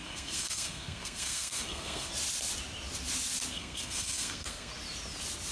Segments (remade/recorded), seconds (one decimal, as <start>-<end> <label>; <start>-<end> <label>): 0.0-2.1 remade; 2.1-3.5 recorded; 3.5-4.7 remade; 4.7-5.5 recorded